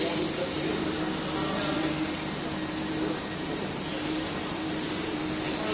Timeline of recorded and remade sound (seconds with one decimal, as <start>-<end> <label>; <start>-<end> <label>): 0.0-3.3 recorded; 3.3-5.2 remade; 5.2-5.7 recorded